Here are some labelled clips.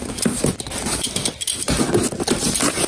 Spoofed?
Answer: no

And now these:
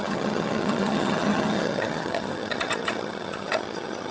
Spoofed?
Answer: yes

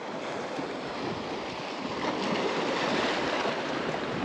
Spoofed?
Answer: no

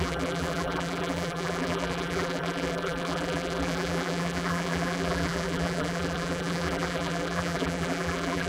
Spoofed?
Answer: yes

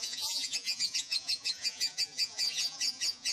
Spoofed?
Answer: yes